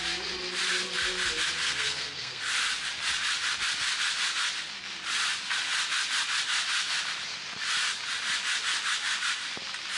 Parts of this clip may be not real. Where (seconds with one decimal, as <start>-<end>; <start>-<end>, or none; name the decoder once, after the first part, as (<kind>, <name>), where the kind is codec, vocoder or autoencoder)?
1.6-2.4 (codec, SNAC)